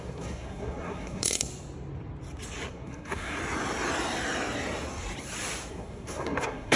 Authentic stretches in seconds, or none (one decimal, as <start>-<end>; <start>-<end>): 1.5-2.7; 3.4-5.7